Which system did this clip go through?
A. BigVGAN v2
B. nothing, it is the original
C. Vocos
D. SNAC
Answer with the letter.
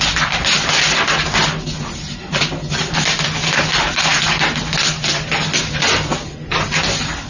B